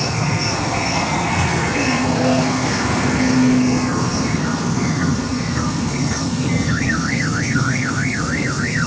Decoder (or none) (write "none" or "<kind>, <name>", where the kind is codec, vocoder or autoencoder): codec, SNAC